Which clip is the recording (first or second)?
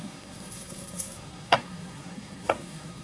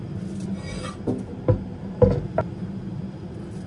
second